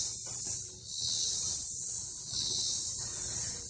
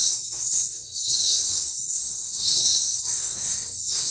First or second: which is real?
first